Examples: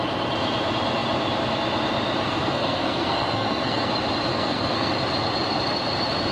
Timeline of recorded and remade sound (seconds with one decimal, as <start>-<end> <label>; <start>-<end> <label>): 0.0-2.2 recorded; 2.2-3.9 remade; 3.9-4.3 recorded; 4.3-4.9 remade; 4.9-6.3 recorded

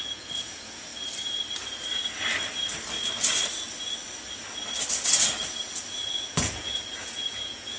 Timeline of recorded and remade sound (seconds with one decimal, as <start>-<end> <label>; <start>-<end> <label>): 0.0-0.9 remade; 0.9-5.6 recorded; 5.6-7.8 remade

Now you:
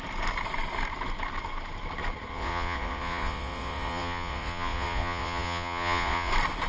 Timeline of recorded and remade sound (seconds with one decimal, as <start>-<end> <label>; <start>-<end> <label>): 0.0-2.3 recorded; 2.3-6.3 remade; 6.3-6.7 recorded

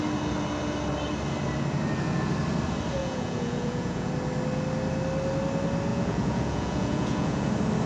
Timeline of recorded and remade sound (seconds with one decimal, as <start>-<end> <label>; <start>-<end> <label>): 0.0-3.0 recorded; 3.0-4.1 remade; 4.1-5.9 recorded; 5.9-7.5 remade; 7.5-7.9 recorded

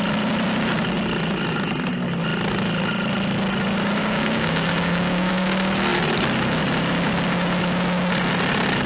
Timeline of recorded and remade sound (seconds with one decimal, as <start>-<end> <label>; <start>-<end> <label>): 0.0-4.0 recorded; 4.0-5.3 remade; 5.3-8.9 recorded

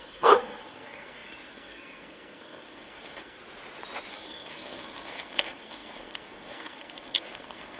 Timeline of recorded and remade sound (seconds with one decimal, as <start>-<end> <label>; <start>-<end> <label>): 0.0-3.4 remade; 3.4-4.1 recorded; 4.1-7.8 remade

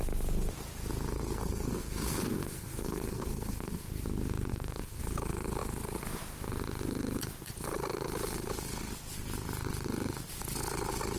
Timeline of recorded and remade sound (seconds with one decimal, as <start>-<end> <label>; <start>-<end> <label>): 0.0-1.1 recorded; 1.1-3.9 remade; 3.9-4.5 recorded; 4.5-5.0 remade; 5.0-11.2 recorded